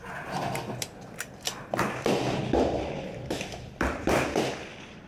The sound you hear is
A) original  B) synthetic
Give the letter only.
B